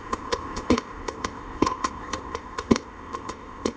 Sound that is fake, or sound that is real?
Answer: fake